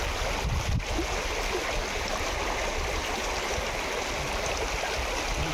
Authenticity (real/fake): real